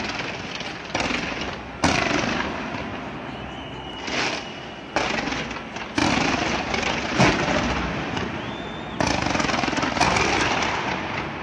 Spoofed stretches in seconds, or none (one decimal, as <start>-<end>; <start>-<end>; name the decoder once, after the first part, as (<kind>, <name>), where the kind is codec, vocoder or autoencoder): 6.0-7.1 (vocoder, BigVGAN v2)